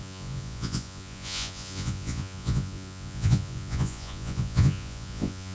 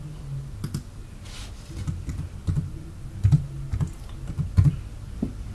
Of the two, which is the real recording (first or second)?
second